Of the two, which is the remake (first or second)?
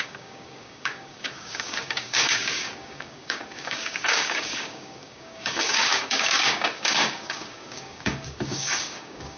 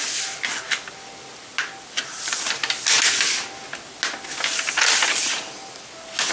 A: first